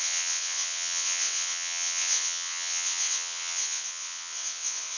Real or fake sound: fake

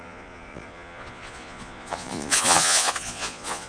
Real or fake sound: fake